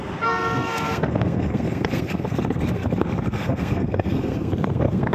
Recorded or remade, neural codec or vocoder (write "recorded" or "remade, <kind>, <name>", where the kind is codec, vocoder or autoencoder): remade, codec, SNAC